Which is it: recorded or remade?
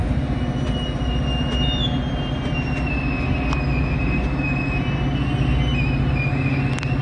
recorded